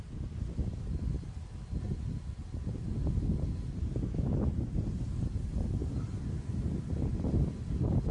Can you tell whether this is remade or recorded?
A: recorded